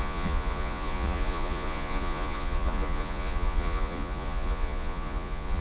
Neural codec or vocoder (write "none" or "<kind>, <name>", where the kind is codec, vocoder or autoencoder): vocoder, Vocos